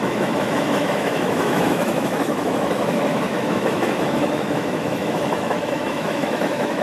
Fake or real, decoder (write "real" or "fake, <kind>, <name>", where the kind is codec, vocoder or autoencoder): fake, autoencoder, DAC-VAE